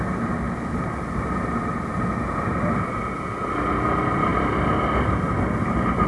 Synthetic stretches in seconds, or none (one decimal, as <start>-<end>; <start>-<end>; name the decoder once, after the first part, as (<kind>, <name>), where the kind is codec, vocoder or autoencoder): none